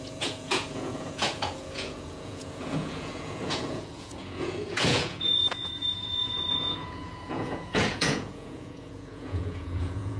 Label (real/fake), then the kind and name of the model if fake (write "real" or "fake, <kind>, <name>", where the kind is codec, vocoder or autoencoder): fake, vocoder, Vocos